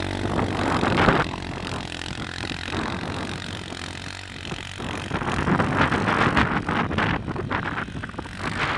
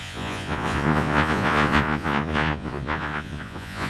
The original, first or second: first